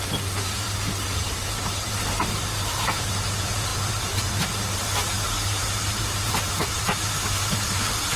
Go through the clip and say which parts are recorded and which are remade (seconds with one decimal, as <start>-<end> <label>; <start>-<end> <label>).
0.0-8.2 remade